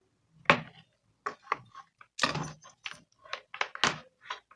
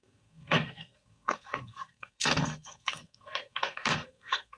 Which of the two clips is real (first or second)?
first